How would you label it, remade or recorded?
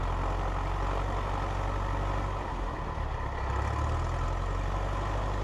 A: recorded